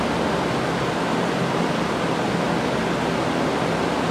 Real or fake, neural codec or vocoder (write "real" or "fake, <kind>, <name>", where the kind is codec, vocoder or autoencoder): real